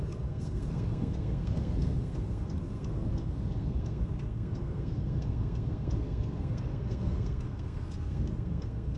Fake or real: fake